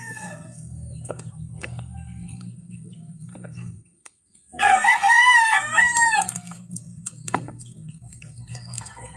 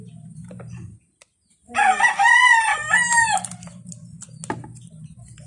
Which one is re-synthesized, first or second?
first